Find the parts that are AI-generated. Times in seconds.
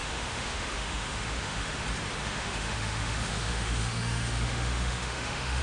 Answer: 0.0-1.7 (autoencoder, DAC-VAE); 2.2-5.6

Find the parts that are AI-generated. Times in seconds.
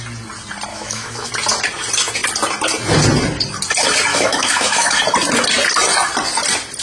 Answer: 0.7-1.3 (autoencoder, DAC-VAE); 4.1-5.0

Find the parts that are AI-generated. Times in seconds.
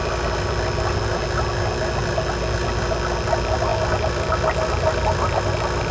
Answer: none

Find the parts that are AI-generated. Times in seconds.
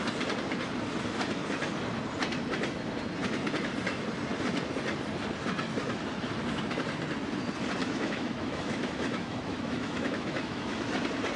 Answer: 7.8-10.9 (autoencoder, DAC-VAE)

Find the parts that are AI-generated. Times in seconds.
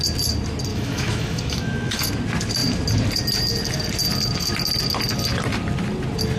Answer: 0.7-2.1 (autoencoder, DAC-VAE)